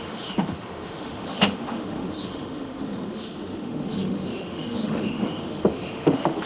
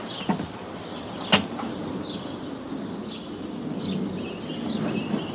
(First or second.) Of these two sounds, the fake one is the first